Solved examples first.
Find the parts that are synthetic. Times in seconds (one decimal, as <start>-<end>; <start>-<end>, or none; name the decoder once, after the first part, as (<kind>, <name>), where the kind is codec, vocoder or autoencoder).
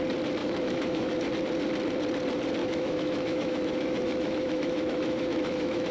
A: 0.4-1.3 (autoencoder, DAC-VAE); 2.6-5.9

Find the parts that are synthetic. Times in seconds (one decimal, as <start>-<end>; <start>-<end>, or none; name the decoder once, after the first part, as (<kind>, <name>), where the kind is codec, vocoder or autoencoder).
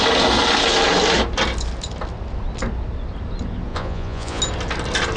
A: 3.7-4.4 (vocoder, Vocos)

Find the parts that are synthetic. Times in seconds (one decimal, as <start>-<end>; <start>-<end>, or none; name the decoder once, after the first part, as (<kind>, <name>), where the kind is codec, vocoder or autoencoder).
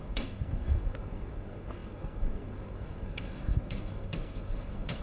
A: 0.0-5.0 (codec, SNAC)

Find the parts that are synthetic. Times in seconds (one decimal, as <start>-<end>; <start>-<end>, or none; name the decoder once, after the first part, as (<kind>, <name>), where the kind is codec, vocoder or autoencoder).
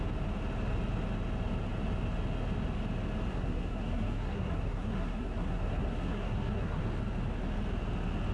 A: 3.3-6.8 (codec, SNAC)